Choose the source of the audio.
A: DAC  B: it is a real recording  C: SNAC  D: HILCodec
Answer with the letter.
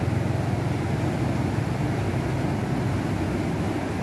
B